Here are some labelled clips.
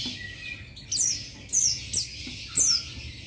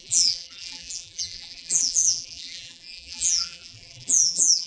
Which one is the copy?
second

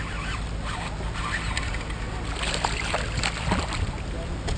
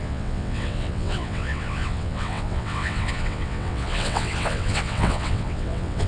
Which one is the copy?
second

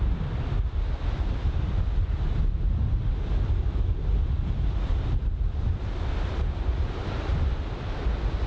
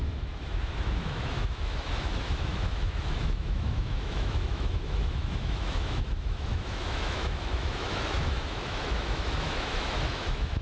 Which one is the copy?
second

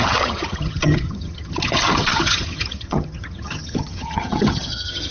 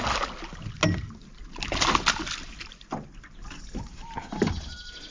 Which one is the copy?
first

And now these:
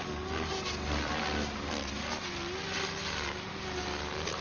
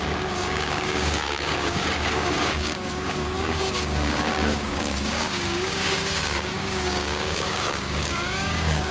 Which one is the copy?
second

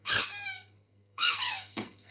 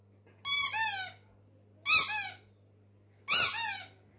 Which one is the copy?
first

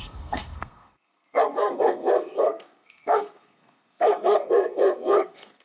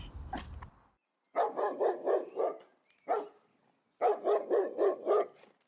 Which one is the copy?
first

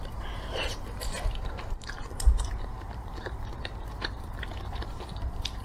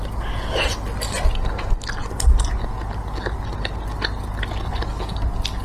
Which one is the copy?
first